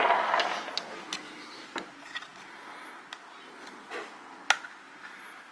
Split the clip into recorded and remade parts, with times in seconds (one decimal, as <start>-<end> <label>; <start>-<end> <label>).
0.0-5.5 recorded